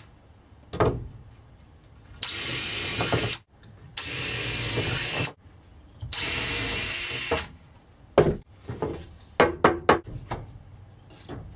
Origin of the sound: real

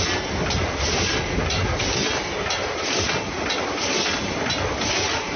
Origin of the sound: real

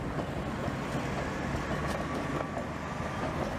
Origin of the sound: real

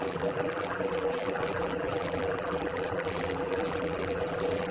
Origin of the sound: fake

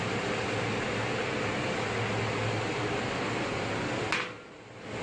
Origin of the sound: real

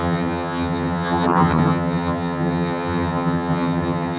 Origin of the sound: fake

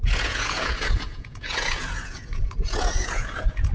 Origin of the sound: fake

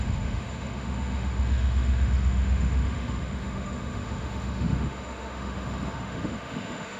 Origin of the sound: fake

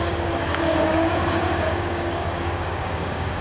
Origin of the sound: fake